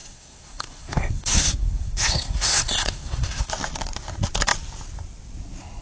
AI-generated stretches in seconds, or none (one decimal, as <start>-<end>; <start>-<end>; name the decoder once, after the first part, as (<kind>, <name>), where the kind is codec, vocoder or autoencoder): 0.0-3.5 (codec, SNAC)